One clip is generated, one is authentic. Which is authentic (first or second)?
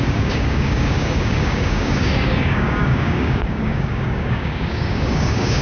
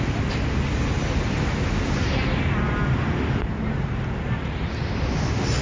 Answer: second